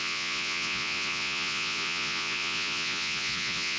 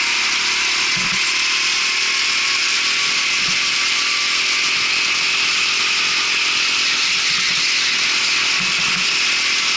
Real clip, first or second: second